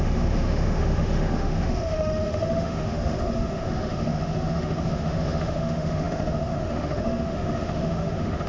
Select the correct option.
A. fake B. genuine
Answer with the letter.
A